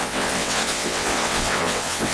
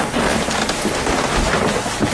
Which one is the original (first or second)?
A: second